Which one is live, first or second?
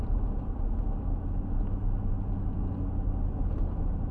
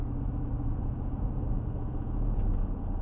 first